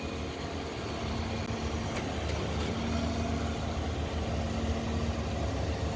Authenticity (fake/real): real